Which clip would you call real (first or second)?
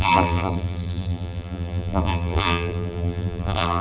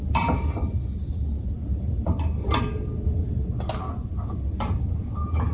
second